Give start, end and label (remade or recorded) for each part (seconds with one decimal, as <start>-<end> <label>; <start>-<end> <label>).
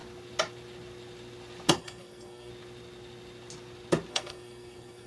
0.0-1.7 recorded; 1.7-2.5 remade; 2.5-4.1 recorded; 4.1-5.1 remade